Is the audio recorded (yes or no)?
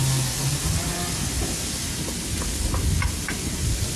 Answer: yes